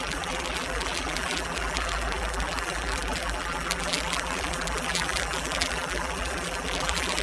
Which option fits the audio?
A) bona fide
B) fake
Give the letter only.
B